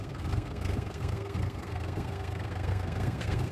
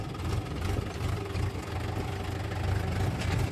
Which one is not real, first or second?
first